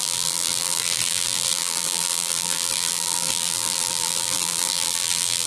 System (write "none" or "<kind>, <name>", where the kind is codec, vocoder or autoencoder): vocoder, BigVGAN v2